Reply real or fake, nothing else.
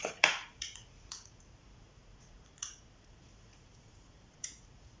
fake